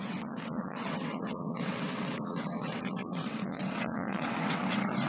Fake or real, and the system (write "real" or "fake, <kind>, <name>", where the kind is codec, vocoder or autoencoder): fake, vocoder, WaveNeXt